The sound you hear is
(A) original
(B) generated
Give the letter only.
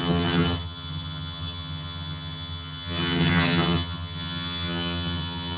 B